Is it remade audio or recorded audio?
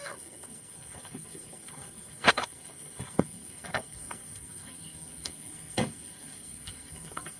remade